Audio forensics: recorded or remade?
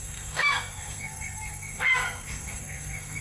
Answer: remade